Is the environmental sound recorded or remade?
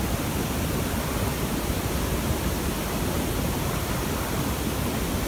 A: recorded